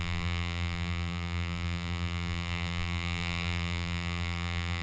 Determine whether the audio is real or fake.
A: fake